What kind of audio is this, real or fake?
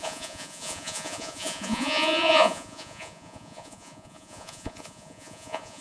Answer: fake